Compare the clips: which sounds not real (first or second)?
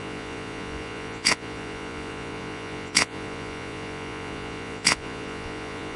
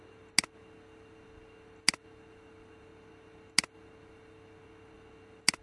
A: first